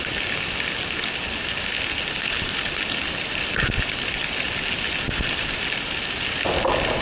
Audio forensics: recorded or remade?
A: recorded